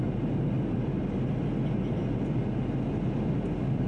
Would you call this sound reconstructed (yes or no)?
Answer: no